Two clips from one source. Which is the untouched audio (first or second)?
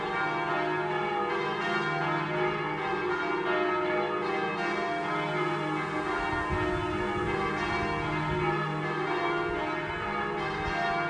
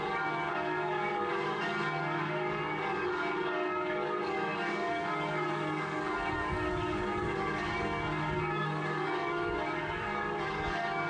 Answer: first